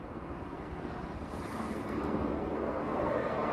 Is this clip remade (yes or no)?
yes